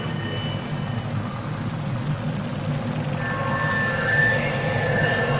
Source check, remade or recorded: recorded